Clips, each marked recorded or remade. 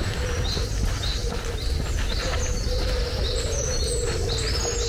recorded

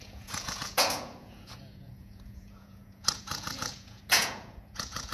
remade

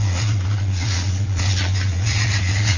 remade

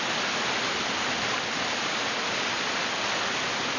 recorded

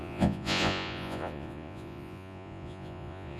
remade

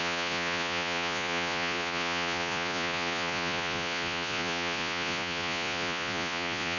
remade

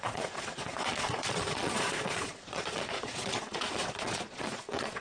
remade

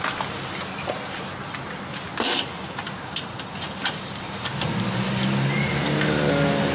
recorded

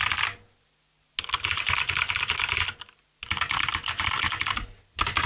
recorded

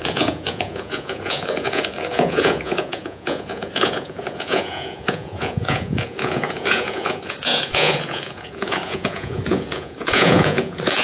remade